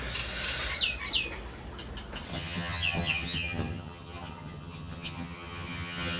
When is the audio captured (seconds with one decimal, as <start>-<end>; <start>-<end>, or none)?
0.0-2.3